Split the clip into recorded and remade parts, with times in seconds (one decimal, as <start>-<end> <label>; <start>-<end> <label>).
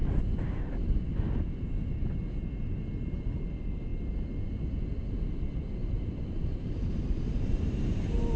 0.0-5.8 recorded; 5.8-8.4 remade